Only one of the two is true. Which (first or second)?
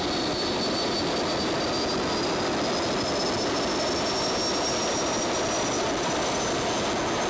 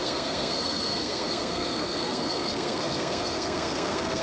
first